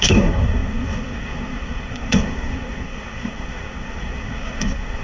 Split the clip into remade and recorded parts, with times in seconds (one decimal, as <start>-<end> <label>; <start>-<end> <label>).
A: 0.0-5.0 remade